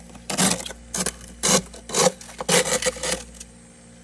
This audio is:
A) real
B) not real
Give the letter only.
A